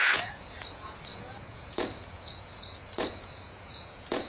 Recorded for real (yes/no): no